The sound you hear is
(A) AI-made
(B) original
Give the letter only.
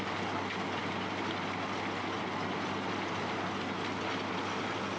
B